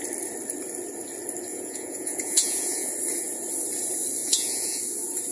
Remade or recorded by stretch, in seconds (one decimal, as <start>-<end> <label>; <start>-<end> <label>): 0.0-1.5 recorded; 1.5-2.9 remade; 2.9-4.2 recorded; 4.2-4.8 remade; 4.8-5.3 recorded